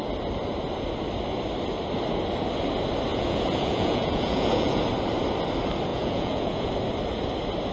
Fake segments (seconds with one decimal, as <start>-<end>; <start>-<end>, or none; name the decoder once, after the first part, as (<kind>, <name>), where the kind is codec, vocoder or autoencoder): 3.1-4.8 (vocoder, Vocos); 5.9-6.7